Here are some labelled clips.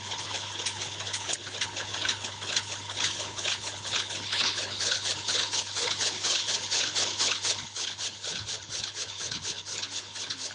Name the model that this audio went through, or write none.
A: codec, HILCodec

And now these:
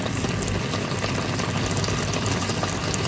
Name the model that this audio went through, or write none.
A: none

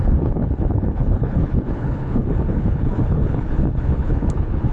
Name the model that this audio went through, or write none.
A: codec, HILCodec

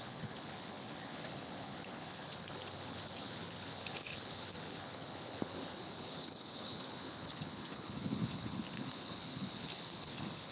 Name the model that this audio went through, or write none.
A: codec, HILCodec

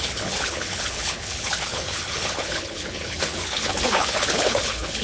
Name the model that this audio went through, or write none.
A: codec, HILCodec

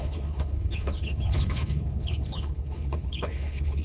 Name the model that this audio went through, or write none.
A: codec, HILCodec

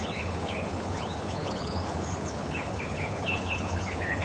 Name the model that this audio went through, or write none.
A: codec, HILCodec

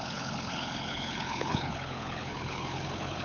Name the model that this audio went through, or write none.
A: codec, HILCodec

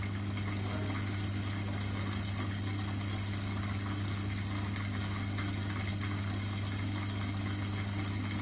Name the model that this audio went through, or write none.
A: none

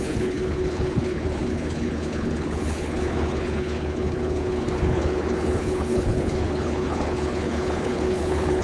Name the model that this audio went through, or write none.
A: codec, HILCodec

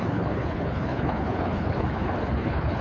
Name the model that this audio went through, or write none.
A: codec, HILCodec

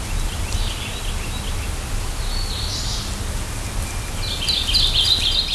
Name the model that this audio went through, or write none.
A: none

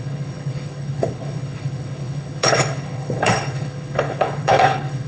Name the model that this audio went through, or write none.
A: codec, HILCodec